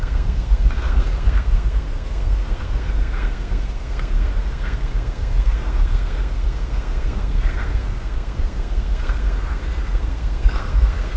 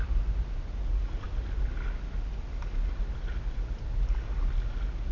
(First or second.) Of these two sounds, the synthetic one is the first